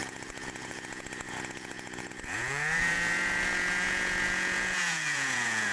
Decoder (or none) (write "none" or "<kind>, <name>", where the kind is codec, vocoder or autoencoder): vocoder, Vocos